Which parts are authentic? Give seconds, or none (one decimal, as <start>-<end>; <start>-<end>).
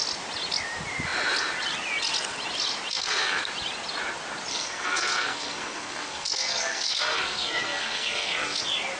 0.0-2.9; 3.4-4.5; 8.6-9.0